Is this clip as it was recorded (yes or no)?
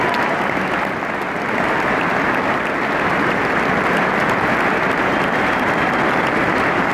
yes